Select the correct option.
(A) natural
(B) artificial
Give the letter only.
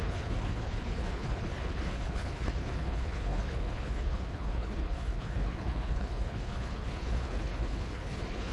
B